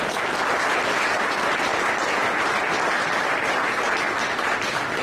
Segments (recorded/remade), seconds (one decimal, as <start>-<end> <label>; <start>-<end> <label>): 0.0-5.0 remade